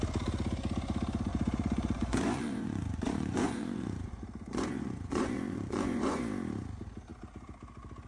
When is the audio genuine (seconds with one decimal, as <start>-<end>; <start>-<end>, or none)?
0.0-1.3; 6.2-8.1